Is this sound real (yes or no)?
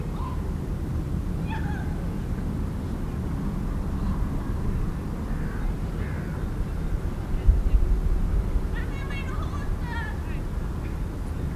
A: yes